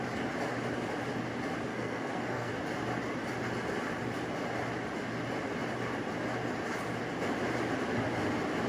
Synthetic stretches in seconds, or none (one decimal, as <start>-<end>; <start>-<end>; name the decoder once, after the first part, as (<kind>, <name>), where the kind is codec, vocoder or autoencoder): 1.7-2.5 (codec, SNAC)